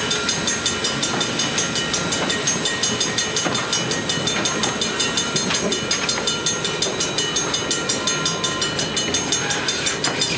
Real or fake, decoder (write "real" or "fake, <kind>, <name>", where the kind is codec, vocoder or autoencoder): real